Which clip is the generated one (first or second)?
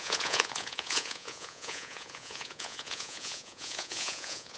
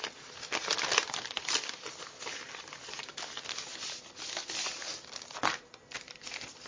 first